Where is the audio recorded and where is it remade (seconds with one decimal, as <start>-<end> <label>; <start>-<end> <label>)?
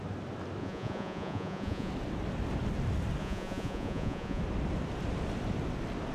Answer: 0.0-0.6 recorded; 0.6-1.9 remade; 1.9-3.2 recorded; 3.2-4.4 remade; 4.4-6.1 recorded